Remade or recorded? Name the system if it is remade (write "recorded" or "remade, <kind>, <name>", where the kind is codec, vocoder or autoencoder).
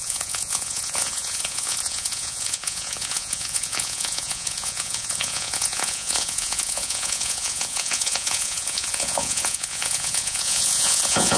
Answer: remade, vocoder, Vocos